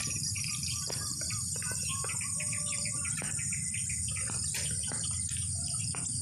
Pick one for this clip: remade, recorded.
remade